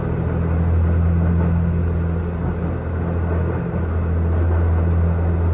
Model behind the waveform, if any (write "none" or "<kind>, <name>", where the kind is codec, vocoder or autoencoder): none